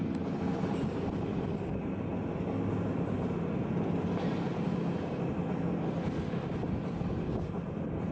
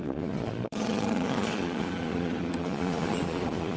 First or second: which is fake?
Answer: second